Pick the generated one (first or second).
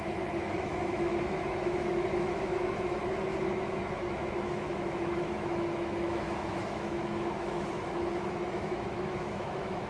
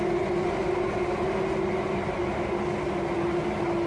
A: first